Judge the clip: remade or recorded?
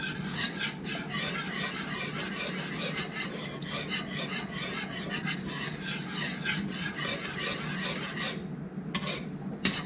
recorded